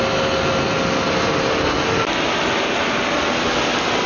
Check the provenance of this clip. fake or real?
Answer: real